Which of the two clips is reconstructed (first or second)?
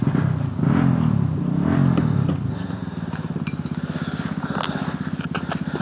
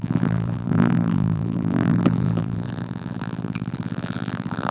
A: second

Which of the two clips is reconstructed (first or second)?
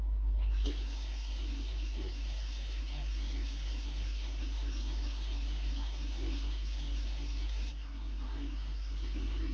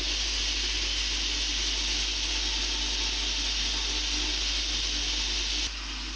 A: first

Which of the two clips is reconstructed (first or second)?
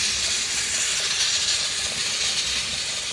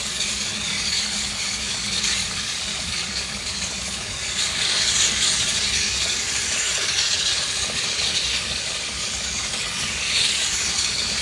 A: second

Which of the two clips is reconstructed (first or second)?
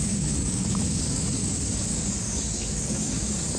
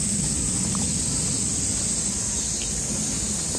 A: first